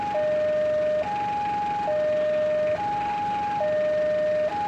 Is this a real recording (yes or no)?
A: yes